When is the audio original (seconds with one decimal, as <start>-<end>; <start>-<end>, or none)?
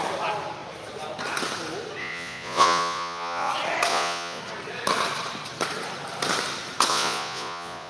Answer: 0.0-2.0; 3.5-3.9; 4.4-6.9